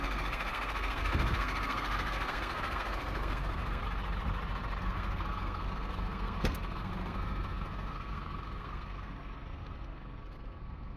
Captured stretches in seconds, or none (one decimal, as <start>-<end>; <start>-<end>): 3.8-4.8